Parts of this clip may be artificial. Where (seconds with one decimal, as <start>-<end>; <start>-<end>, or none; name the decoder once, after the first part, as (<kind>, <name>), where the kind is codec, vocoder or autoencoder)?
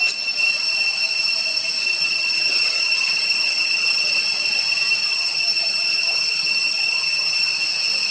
2.0-4.2 (vocoder, HiFi-GAN); 5.0-7.5